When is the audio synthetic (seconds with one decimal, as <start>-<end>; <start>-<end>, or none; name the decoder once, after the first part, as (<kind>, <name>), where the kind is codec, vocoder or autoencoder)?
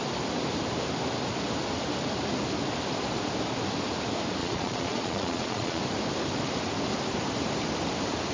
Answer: 4.4-5.8 (vocoder, Vocos)